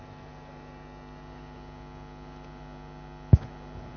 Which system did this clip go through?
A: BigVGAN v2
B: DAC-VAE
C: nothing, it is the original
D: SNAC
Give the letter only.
C